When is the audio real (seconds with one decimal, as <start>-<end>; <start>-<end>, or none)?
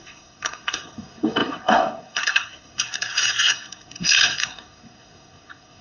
none